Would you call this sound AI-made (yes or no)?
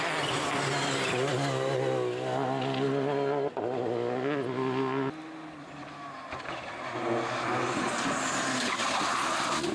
no